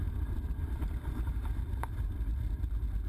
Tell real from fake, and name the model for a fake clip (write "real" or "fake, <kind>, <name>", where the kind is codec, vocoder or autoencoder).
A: fake, vocoder, BigVGAN v2